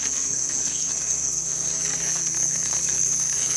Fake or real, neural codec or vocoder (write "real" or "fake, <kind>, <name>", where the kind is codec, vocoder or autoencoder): fake, codec, SNAC